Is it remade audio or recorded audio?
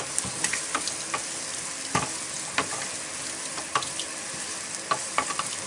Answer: recorded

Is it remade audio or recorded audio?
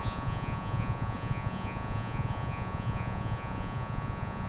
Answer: remade